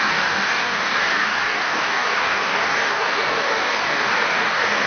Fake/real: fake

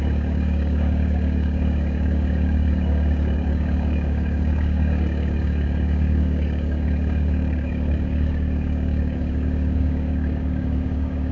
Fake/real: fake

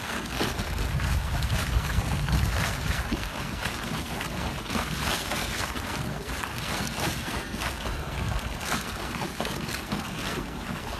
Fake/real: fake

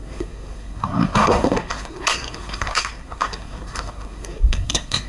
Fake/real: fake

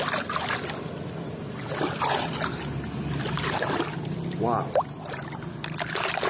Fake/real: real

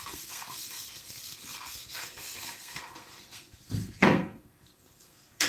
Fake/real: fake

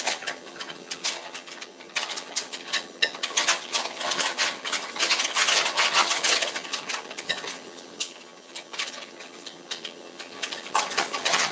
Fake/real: fake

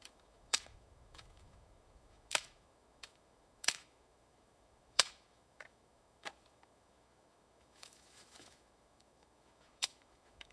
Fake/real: fake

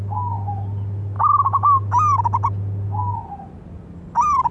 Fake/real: real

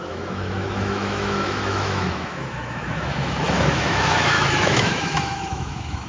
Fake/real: fake